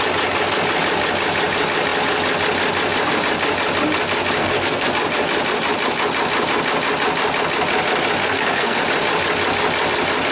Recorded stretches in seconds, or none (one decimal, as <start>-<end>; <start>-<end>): 0.0-4.4; 4.9-8.2; 8.8-10.3